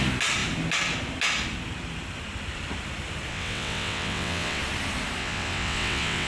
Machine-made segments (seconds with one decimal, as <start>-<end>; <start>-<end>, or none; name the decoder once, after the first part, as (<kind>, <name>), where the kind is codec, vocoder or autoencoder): 3.3-4.6 (vocoder, WaveNeXt); 5.2-6.3